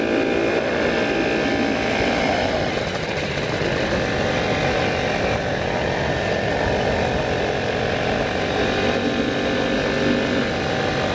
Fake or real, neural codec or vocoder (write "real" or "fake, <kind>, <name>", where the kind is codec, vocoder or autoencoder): real